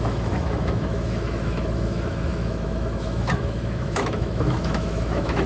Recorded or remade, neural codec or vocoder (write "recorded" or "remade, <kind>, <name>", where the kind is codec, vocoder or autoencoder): remade, autoencoder, DAC-VAE